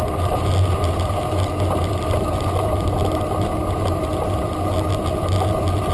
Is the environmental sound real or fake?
real